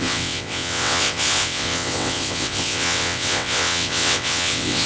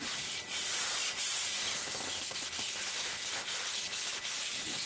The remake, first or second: first